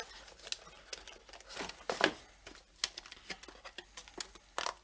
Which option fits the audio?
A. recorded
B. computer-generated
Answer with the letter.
A